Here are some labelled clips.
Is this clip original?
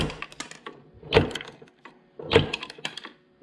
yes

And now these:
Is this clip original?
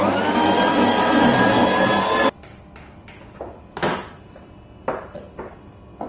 yes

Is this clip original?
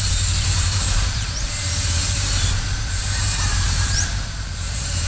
no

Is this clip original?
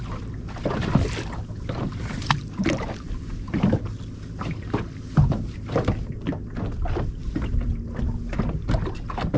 no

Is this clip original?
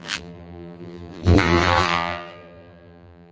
no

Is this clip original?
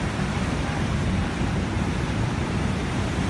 no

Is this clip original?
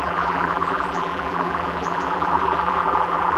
no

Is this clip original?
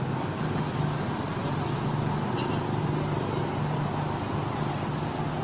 yes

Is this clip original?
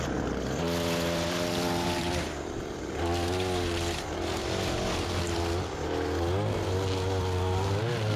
yes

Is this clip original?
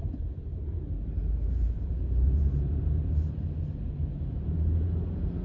no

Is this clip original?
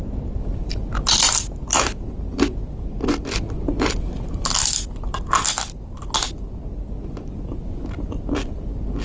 yes